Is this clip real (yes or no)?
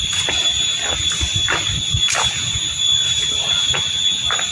yes